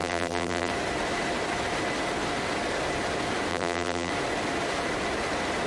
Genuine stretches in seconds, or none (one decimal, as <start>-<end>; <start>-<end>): 0.7-3.5; 4.1-5.7